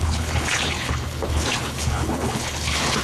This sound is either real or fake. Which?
fake